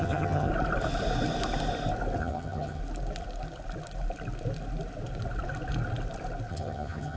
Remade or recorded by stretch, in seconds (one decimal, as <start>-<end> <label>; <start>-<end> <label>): 0.0-0.5 remade; 0.5-2.2 recorded; 2.2-2.8 remade; 2.8-6.5 recorded; 6.5-7.2 remade